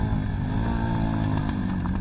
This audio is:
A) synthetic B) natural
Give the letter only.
B